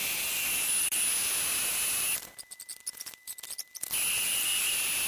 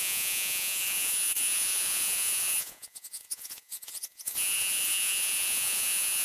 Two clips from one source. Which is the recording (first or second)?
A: first